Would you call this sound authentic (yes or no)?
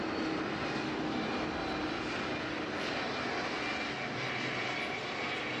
yes